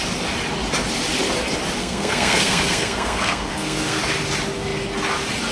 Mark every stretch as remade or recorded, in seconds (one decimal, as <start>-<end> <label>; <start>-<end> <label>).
0.0-1.8 recorded; 1.8-4.0 remade; 4.0-5.5 recorded